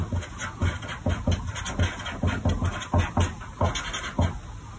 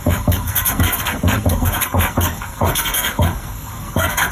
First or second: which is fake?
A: second